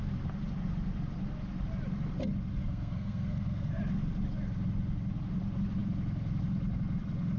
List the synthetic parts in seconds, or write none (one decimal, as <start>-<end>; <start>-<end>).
2.6-3.8